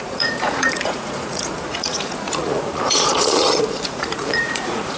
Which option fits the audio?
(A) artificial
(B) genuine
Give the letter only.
A